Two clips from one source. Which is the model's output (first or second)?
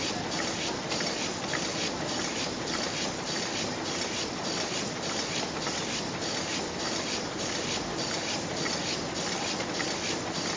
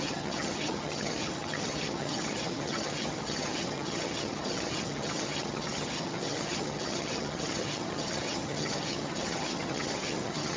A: second